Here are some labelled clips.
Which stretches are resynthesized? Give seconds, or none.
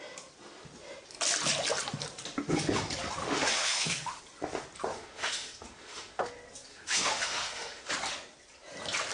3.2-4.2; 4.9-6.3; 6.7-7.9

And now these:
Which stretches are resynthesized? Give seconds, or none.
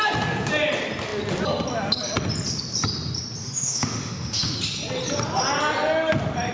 3.4-4.6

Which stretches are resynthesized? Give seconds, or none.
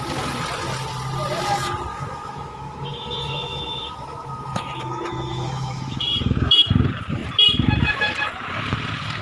1.9-6.7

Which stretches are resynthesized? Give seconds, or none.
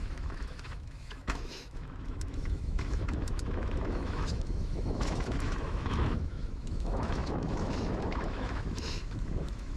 0.0-9.8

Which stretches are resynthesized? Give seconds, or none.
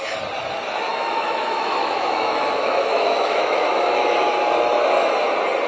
0.9-4.3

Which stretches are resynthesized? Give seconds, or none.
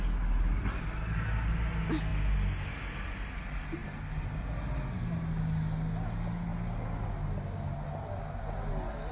none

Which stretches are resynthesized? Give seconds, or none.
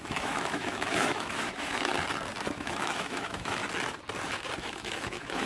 0.0-1.9; 2.5-3.6; 4.6-5.5